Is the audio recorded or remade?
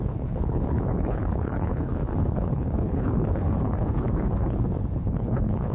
remade